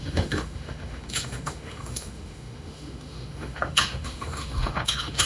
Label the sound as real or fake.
fake